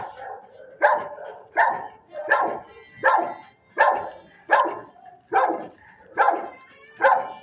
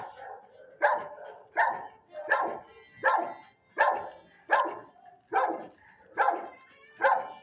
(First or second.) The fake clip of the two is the first